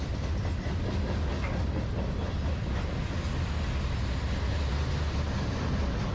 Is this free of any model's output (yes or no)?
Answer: yes